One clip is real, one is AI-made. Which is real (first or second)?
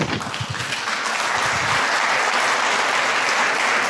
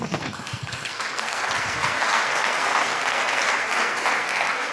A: first